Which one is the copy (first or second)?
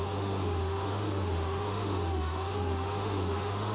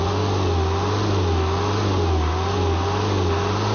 first